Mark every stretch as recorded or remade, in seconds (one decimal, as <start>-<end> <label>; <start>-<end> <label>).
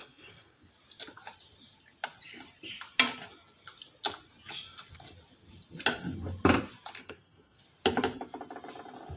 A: 0.0-0.7 remade; 0.7-7.0 recorded; 7.0-7.6 remade; 7.6-9.2 recorded